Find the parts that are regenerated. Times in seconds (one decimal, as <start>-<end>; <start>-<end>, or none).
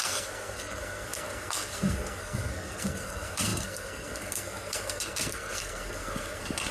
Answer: 0.0-6.7